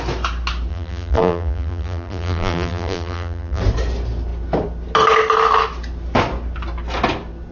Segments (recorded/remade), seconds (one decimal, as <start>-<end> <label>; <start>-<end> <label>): 0.0-0.7 recorded; 0.7-3.6 remade; 3.6-7.5 recorded